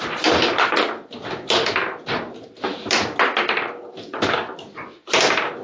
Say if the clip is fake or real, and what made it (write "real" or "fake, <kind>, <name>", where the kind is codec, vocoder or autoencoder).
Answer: real